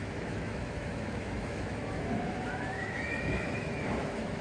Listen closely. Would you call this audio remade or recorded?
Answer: remade